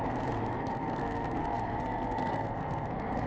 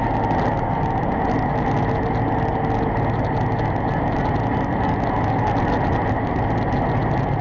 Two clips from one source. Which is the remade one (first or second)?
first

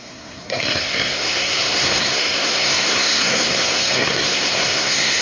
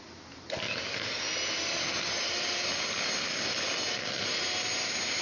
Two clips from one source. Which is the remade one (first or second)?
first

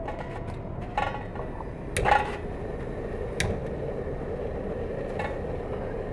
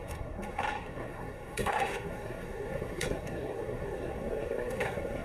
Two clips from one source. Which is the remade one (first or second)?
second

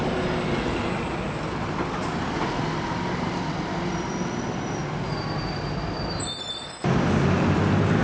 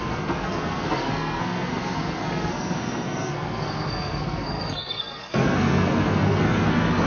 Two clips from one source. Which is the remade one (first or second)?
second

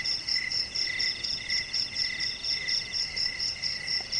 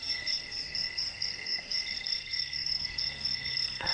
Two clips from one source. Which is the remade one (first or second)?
second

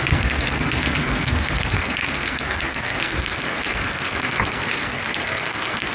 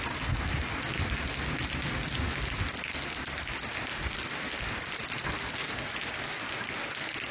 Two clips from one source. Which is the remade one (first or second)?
first